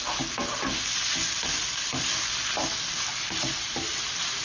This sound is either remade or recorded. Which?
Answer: recorded